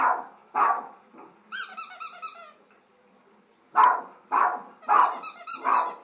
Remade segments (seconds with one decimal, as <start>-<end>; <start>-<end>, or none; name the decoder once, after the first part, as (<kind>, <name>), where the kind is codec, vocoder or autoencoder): none